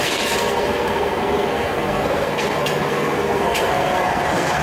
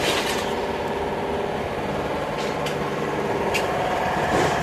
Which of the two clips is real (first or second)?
second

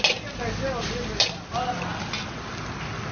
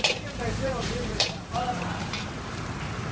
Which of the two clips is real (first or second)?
first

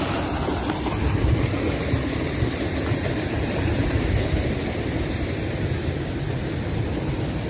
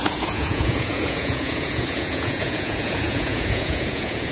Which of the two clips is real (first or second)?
first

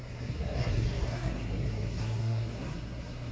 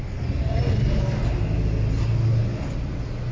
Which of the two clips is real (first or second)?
second